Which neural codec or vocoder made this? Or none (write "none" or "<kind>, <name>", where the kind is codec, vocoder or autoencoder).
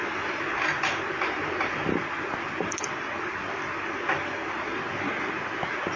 none